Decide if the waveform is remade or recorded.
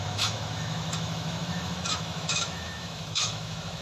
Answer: remade